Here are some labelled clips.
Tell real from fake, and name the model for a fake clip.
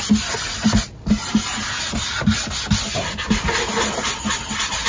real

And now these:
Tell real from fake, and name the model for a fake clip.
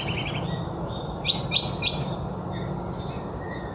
real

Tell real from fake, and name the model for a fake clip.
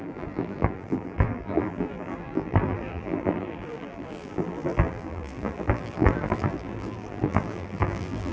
fake, vocoder, BigVGAN v2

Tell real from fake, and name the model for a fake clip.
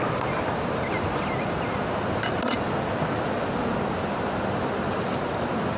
real